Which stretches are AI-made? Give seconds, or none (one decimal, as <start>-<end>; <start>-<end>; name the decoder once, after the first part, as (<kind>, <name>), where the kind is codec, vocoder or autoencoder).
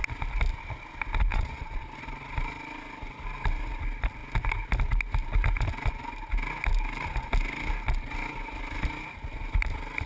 1.3-1.9 (vocoder, Vocos)